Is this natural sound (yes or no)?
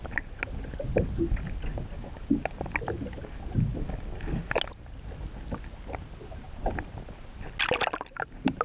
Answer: yes